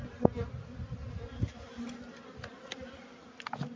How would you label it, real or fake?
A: real